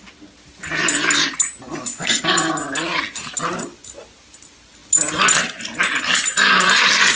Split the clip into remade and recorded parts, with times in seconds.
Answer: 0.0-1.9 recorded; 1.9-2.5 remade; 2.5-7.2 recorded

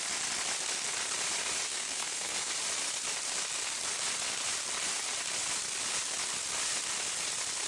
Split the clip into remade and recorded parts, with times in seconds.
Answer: 0.0-1.7 recorded; 1.7-2.5 remade; 2.5-7.7 recorded

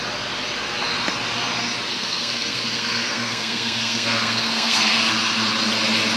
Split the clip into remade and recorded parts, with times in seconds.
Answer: 0.0-1.9 recorded; 1.9-5.1 remade; 5.1-6.2 recorded

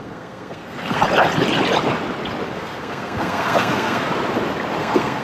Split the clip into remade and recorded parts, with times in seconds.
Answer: 0.0-1.0 remade; 1.0-2.5 recorded; 2.5-4.1 remade; 4.1-4.8 recorded; 4.8-5.2 remade

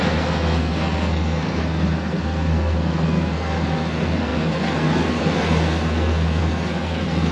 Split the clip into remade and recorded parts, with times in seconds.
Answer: 0.0-7.3 remade

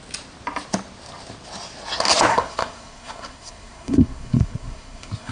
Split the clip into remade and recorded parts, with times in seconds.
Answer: 0.0-2.3 recorded; 2.3-5.3 remade

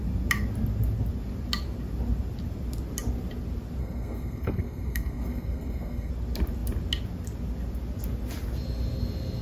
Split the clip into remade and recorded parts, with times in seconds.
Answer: 0.0-3.8 recorded; 3.8-6.1 remade; 6.1-9.4 recorded